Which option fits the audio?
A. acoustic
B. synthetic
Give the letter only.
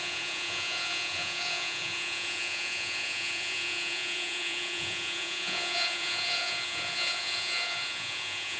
B